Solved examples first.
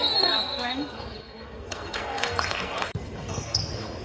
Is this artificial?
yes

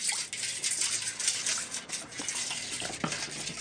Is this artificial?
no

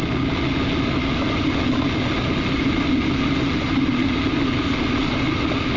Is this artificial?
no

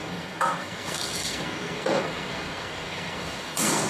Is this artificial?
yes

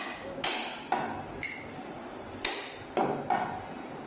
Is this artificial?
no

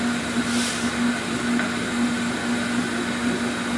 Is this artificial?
no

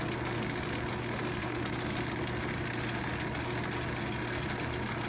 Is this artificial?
no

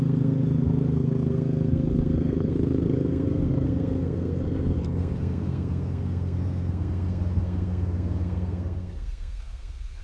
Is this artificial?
yes